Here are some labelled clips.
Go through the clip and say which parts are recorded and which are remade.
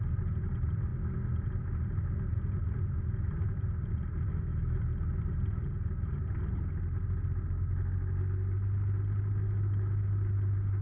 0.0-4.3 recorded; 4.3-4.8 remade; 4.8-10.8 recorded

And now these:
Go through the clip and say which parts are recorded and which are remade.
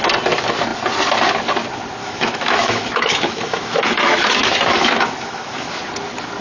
0.0-2.0 recorded; 2.0-5.8 remade; 5.8-6.4 recorded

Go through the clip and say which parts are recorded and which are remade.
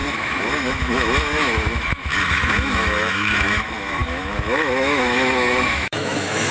0.0-6.5 remade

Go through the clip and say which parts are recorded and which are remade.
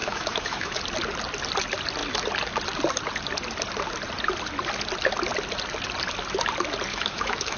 0.0-0.8 remade; 0.8-6.9 recorded; 6.9-7.6 remade